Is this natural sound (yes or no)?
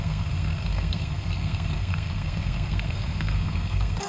no